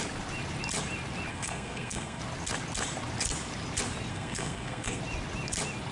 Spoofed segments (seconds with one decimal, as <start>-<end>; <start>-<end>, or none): 1.3-2.2; 4.1-5.0

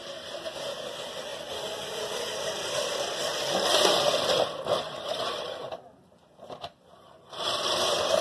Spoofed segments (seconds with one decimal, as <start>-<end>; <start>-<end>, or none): none